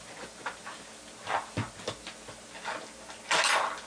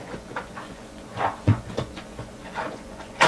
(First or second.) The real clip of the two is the first